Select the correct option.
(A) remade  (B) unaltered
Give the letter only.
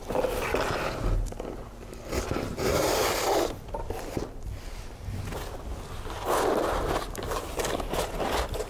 B